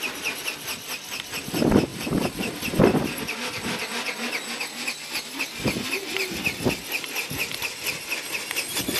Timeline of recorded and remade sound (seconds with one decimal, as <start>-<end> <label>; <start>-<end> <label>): 0.0-9.0 recorded